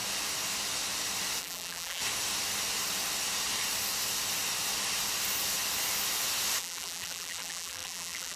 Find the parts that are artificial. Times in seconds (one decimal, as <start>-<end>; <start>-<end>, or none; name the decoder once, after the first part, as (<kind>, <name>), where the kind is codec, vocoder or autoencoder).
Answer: 1.4-2.0 (vocoder, BigVGAN v2); 6.6-8.4